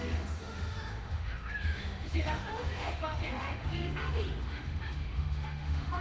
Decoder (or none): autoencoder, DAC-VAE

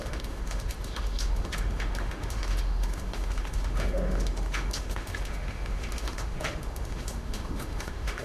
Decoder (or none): autoencoder, DAC-VAE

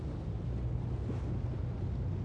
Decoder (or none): none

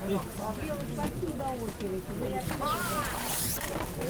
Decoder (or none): none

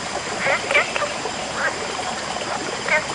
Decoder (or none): none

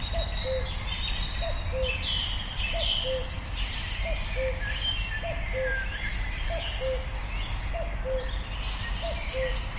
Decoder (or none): none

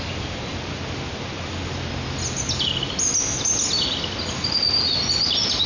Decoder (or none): none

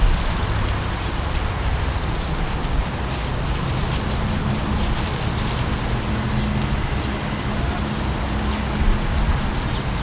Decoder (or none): none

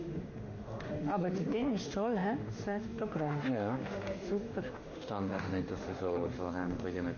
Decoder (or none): autoencoder, DAC-VAE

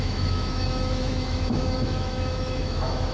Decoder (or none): autoencoder, DAC-VAE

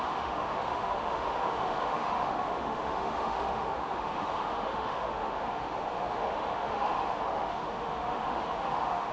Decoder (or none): autoencoder, DAC-VAE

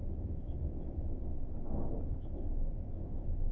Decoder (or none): autoencoder, DAC-VAE